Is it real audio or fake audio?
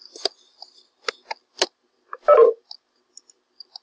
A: real